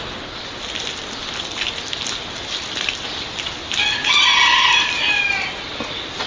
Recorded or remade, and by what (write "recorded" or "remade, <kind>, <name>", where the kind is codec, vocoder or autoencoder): recorded